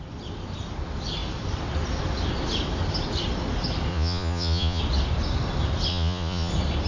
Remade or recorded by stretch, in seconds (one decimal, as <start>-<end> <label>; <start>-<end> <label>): 0.0-3.9 recorded; 3.9-4.8 remade; 4.8-5.9 recorded; 5.9-6.5 remade; 6.5-6.9 recorded